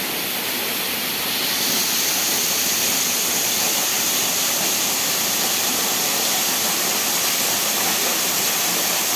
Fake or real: real